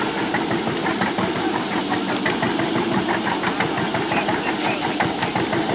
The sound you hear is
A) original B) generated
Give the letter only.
A